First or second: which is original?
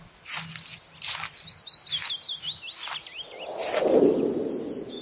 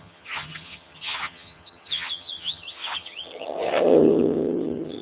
first